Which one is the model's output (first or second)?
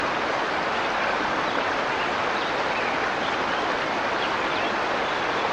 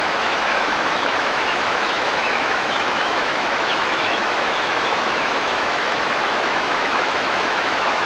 second